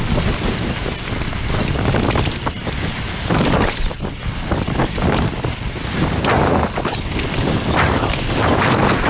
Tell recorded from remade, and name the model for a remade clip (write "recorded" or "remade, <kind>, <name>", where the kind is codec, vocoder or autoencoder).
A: recorded